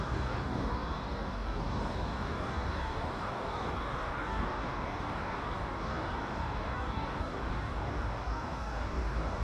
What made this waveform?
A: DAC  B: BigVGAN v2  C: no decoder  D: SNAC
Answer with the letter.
A